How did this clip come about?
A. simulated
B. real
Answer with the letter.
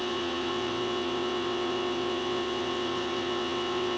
A